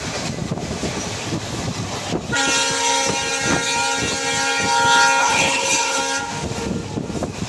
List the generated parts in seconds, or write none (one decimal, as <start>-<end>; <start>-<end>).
5.2-6.0

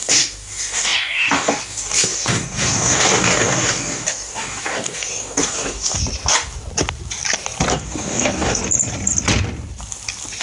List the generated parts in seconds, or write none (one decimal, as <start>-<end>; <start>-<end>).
0.0-6.0; 7.7-8.6

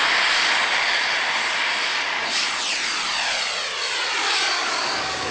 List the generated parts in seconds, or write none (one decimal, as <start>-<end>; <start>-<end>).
1.9-2.6; 4.2-5.3

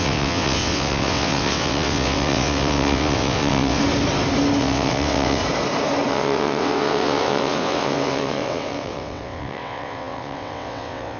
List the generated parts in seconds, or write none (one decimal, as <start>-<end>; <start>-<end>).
0.0-3.8; 4.6-5.4; 6.1-11.2

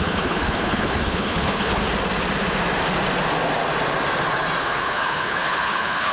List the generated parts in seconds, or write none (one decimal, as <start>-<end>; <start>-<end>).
0.0-1.8; 4.6-6.1